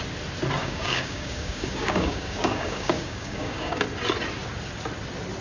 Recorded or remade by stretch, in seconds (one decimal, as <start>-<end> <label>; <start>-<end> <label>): 0.0-0.6 recorded; 0.6-3.8 remade; 3.8-5.4 recorded

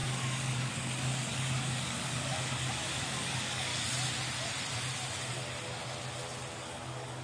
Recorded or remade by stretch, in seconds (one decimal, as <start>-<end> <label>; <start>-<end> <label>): 0.0-3.7 remade; 3.7-6.5 recorded; 6.5-7.2 remade

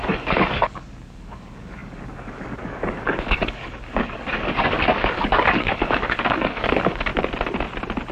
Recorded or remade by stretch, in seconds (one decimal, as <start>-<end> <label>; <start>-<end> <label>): 0.0-7.1 remade; 7.1-8.1 recorded

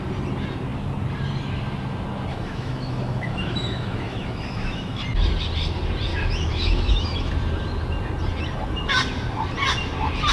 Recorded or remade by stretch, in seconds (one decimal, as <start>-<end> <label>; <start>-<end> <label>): 0.0-2.3 recorded; 2.3-5.0 remade; 5.0-6.1 recorded; 6.1-7.3 remade; 7.3-10.3 recorded

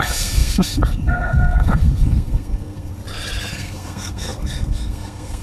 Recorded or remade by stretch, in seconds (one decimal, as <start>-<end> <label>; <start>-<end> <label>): 0.0-2.9 remade; 2.9-3.5 recorded; 3.5-5.4 remade

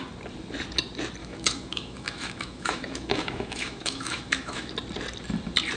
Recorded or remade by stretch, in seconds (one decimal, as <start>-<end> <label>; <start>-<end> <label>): 0.0-1.2 recorded; 1.2-4.7 remade; 4.7-5.8 recorded

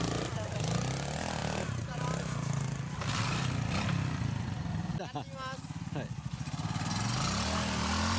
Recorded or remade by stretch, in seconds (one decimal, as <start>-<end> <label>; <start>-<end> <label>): 0.0-8.2 recorded

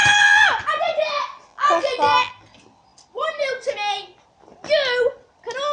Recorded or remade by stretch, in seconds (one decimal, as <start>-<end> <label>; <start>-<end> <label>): 0.0-1.5 recorded; 1.5-2.3 remade; 2.3-5.7 recorded